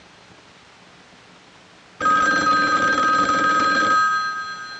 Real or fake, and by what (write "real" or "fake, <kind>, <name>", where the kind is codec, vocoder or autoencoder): real